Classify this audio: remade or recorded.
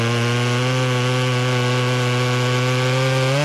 recorded